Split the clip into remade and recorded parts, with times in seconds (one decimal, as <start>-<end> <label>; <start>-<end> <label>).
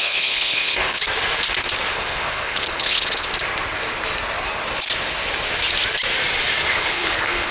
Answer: 0.0-1.0 remade; 1.0-1.9 recorded; 1.9-3.3 remade; 3.3-6.7 recorded; 6.7-7.5 remade